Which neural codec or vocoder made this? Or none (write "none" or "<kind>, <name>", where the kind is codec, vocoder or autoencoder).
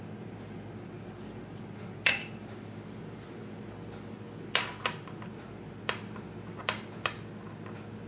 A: none